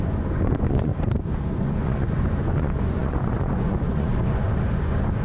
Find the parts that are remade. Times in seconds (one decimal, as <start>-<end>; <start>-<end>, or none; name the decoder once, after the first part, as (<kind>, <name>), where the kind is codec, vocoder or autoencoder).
0.0-0.9 (vocoder, Vocos); 1.6-5.2